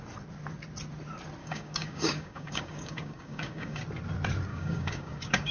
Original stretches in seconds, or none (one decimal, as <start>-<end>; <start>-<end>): 0.0-1.4; 3.8-4.5